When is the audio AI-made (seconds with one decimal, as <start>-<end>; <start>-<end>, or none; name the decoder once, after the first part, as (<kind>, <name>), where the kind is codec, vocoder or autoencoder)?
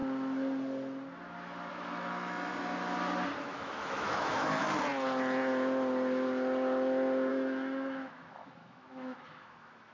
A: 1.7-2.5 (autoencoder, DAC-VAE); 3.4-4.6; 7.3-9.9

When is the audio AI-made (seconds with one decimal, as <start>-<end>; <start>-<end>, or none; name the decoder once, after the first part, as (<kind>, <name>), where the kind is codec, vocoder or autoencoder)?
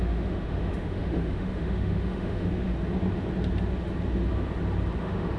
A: 0.0-2.7 (autoencoder, DAC-VAE); 5.0-5.4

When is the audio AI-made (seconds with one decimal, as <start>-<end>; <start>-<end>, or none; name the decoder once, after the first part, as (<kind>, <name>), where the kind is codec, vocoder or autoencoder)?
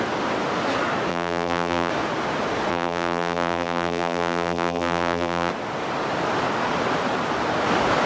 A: 1.1-1.9 (vocoder, BigVGAN v2); 2.7-5.5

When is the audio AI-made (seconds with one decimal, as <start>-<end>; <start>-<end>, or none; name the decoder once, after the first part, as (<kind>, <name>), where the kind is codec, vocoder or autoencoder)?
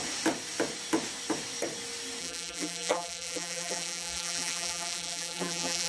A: 2.2-5.9 (vocoder, BigVGAN v2)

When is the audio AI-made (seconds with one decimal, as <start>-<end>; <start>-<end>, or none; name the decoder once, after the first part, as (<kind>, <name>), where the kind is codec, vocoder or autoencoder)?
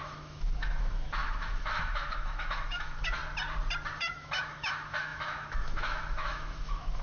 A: 0.0-3.2 (autoencoder, DAC-VAE); 4.0-7.0